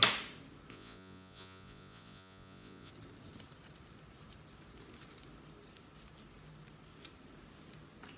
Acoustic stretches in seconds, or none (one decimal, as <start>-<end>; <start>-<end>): 0.0-0.7; 2.9-8.2